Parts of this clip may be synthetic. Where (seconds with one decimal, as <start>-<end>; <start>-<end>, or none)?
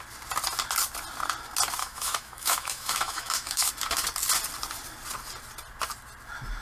1.8-3.7